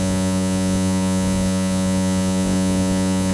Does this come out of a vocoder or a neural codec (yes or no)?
yes